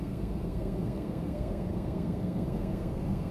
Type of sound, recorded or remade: remade